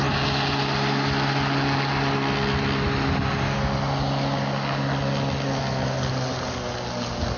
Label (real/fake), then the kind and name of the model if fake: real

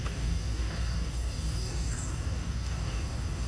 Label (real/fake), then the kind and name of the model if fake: fake, codec, DAC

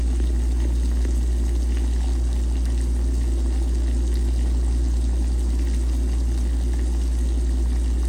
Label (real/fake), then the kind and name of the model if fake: real